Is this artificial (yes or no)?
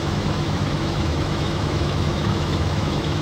yes